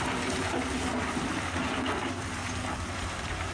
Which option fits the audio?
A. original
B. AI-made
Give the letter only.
B